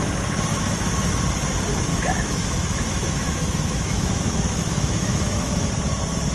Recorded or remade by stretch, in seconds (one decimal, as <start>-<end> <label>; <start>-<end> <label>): 0.0-0.5 recorded; 0.5-1.2 remade; 1.2-1.9 recorded; 1.9-5.7 remade; 5.7-6.3 recorded